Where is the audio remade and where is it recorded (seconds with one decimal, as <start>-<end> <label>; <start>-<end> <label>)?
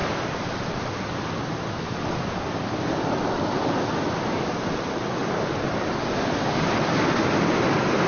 0.0-8.1 recorded